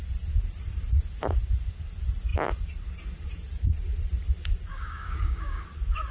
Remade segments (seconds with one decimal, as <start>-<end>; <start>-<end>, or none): 4.7-5.6